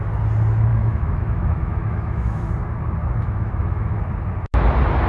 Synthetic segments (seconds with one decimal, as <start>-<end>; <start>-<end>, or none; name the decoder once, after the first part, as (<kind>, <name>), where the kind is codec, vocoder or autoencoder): 0.7-2.5 (autoencoder, DAC-VAE); 3.0-4.0